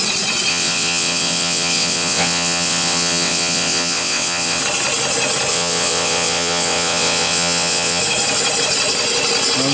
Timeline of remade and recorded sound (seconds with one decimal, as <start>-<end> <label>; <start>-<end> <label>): 0.0-0.5 recorded; 0.5-4.6 remade; 4.6-5.5 recorded; 5.5-8.0 remade; 8.0-9.7 recorded